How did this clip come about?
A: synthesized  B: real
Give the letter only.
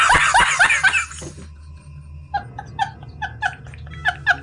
B